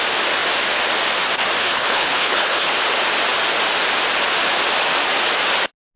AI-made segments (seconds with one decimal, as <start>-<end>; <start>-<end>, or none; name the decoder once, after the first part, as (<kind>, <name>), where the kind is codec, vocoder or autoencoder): 1.6-2.7 (codec, HILCodec)